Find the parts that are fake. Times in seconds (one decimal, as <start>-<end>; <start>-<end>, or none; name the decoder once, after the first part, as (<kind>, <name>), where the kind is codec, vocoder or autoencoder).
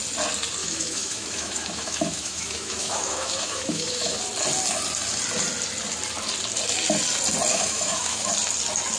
0.6-4.2 (autoencoder, DAC-VAE); 7.5-8.3